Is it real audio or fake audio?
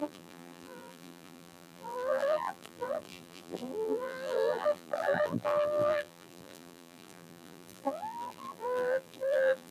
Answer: fake